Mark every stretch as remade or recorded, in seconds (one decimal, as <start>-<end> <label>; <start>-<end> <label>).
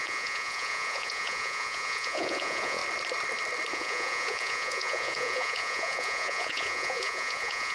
0.0-2.8 remade; 2.8-3.7 recorded; 3.7-7.7 remade